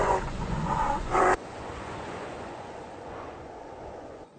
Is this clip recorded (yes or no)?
no